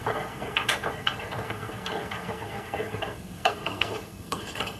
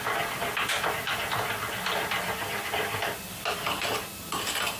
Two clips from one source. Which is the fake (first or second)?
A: first